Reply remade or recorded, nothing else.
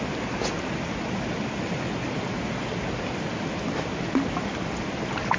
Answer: recorded